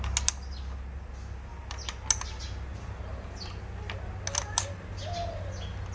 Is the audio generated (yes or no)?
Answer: no